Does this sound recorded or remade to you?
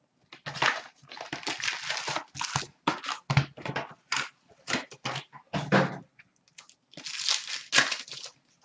recorded